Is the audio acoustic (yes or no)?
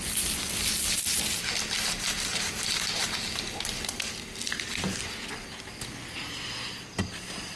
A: yes